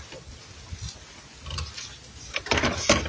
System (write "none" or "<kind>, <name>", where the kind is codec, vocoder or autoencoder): none